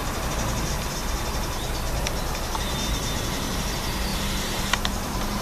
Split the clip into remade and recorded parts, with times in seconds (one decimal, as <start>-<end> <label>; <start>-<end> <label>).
0.0-4.1 recorded; 4.1-5.4 remade